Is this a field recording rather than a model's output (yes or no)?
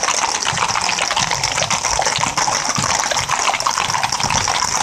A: no